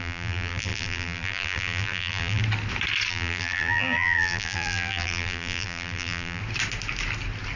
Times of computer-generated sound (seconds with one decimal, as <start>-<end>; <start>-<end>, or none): 0.0-2.4; 3.1-6.4